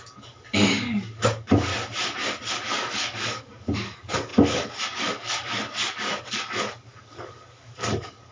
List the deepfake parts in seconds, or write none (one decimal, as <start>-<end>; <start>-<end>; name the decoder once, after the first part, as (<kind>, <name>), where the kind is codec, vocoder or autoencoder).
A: 0.0-1.7 (codec, DAC); 2.5-8.3

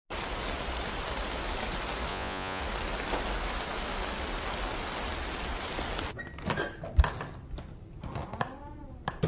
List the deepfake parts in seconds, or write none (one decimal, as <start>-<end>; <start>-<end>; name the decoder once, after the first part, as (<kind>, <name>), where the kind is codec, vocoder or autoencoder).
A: 2.1-2.6 (vocoder, Vocos)

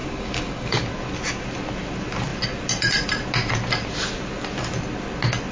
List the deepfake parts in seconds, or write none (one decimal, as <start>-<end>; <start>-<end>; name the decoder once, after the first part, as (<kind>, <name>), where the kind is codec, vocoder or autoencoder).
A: 0.0-0.8 (codec, DAC)

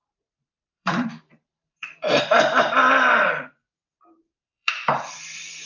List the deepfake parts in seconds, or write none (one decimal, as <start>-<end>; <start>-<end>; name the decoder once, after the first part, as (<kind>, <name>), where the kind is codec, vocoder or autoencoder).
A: 0.0-2.2 (vocoder, BigVGAN v2); 3.8-4.8